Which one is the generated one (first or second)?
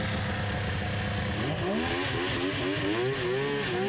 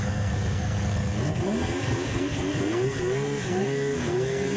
second